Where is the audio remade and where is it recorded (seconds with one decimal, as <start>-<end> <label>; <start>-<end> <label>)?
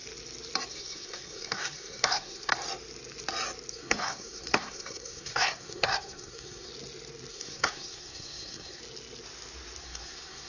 0.0-0.7 recorded; 0.7-2.5 remade; 2.5-3.7 recorded; 3.7-6.7 remade; 6.7-7.3 recorded; 7.3-8.8 remade; 8.8-9.8 recorded; 9.8-10.5 remade